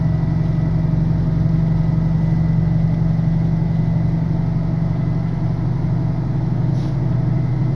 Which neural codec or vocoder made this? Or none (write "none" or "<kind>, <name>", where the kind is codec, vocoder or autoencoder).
none